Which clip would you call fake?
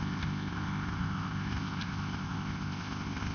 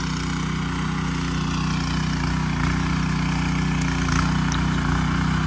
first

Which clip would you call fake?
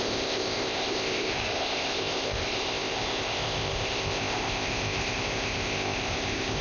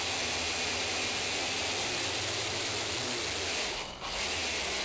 first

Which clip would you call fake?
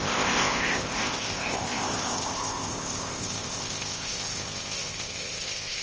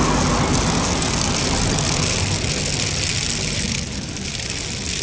first